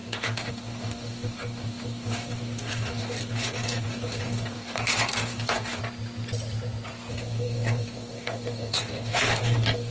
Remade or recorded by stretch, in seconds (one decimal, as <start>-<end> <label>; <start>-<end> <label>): 0.0-5.8 remade; 5.8-7.1 recorded; 7.1-9.9 remade